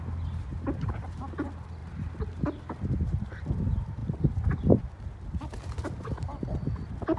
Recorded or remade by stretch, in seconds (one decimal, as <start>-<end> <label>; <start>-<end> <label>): 0.0-7.2 recorded